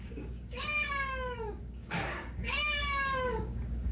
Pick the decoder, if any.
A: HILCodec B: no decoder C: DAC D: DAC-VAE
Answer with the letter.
C